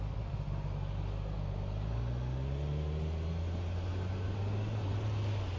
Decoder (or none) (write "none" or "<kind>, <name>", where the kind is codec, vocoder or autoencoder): none